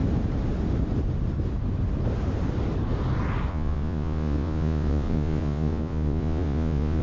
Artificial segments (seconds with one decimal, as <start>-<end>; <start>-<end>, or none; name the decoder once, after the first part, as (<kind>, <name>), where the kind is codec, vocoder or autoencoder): 3.5-7.0 (vocoder, Vocos)